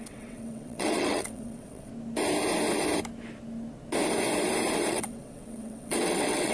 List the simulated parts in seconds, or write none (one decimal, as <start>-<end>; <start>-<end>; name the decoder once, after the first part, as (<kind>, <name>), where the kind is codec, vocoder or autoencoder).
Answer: 0.0-1.9 (vocoder, WaveNeXt); 4.9-6.5